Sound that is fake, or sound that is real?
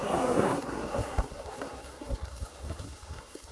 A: fake